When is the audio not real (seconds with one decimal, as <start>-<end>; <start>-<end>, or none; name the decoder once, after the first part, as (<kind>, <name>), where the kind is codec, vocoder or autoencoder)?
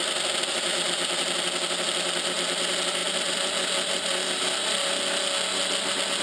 none